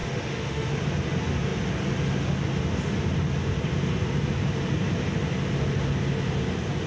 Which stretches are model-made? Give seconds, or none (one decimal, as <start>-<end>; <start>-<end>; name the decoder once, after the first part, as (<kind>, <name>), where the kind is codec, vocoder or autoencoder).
0.0-0.7 (autoencoder, DAC-VAE)